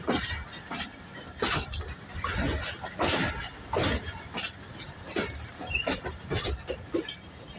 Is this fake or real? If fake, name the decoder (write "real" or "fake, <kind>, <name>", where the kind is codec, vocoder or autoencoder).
real